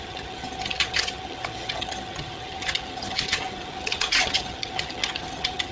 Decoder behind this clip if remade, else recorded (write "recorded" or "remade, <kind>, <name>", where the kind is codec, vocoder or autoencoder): remade, vocoder, HiFi-GAN